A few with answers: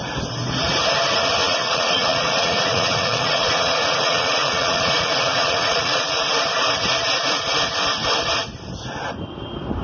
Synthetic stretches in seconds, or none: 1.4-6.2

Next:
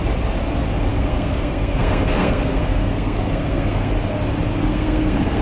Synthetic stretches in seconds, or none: 0.9-3.9; 4.6-5.4

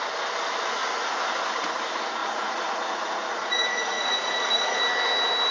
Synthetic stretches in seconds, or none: 0.8-1.3; 2.2-4.8